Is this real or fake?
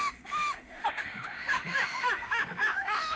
fake